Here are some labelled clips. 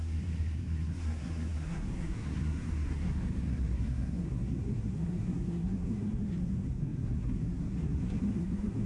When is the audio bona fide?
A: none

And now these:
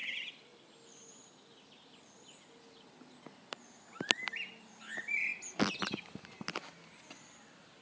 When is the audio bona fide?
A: 0.0-7.8